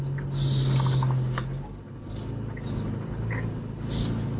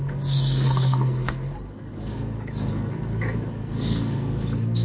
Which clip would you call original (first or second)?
first